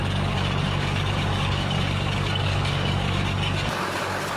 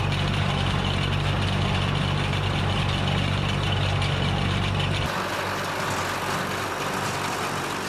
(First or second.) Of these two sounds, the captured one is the second